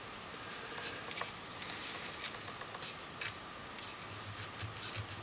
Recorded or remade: recorded